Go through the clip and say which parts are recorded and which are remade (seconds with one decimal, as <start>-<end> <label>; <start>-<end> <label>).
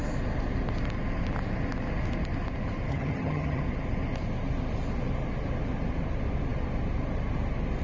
0.0-2.9 recorded; 2.9-3.6 remade; 3.6-7.8 recorded